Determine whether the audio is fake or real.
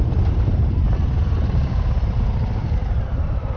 fake